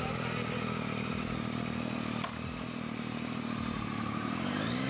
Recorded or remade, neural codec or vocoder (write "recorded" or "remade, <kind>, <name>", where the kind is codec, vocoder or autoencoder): recorded